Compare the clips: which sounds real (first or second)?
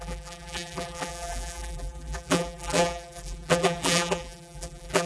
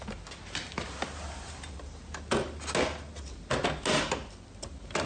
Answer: second